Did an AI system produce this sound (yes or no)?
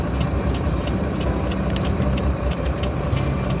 yes